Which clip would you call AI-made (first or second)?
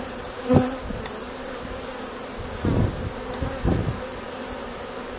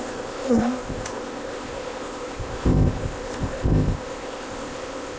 second